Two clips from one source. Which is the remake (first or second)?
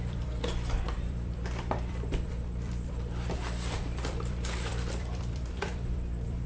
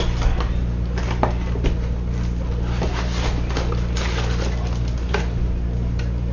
first